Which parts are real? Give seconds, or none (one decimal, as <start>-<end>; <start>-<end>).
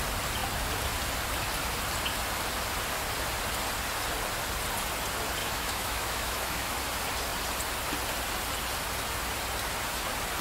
0.0-5.4; 6.8-10.4